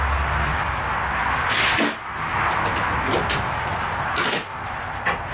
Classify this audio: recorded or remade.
recorded